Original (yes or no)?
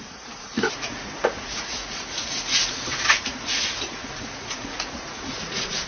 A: no